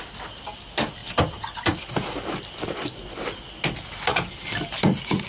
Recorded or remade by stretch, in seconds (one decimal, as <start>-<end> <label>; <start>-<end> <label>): 0.0-5.3 recorded